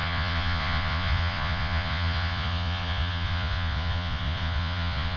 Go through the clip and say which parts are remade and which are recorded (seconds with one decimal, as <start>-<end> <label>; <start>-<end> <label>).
0.0-5.2 remade